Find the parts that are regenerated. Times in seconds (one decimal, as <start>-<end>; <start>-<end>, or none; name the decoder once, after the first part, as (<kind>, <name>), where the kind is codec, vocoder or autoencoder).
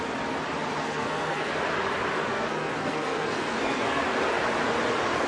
0.8-1.5 (codec, SNAC); 2.3-4.0